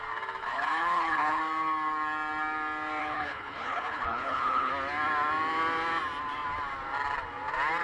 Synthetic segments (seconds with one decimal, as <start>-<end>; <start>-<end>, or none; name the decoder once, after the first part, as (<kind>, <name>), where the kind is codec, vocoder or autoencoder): 0.4-1.4 (codec, HILCodec); 3.0-4.7